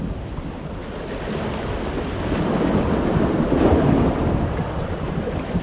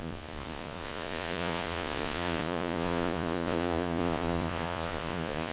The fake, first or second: second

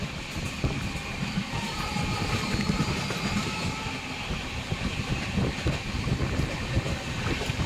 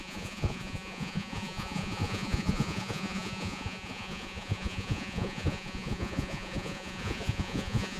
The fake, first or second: second